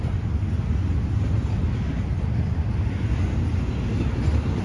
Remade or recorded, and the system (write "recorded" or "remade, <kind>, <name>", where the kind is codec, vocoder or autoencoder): recorded